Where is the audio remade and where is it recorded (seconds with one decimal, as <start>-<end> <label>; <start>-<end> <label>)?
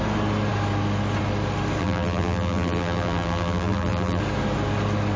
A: 0.0-1.8 recorded; 1.8-4.2 remade; 4.2-5.2 recorded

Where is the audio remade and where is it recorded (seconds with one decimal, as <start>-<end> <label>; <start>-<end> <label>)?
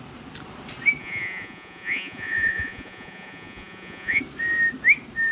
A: 0.0-1.0 recorded; 1.0-4.2 remade; 4.2-5.3 recorded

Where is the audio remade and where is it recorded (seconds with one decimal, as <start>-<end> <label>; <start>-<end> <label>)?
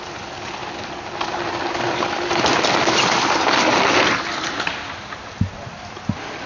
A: 0.0-6.5 recorded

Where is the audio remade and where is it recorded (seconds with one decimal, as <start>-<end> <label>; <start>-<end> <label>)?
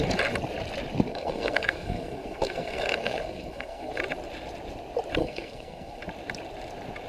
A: 0.0-1.1 recorded; 1.1-3.9 remade; 3.9-5.2 recorded; 5.2-6.0 remade; 6.0-7.1 recorded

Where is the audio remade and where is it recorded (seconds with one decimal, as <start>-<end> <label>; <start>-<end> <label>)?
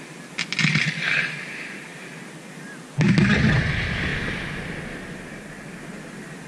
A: 0.0-6.5 recorded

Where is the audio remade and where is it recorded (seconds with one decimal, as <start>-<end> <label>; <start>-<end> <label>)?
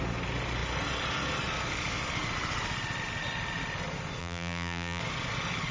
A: 0.0-4.2 recorded; 4.2-5.0 remade; 5.0-5.7 recorded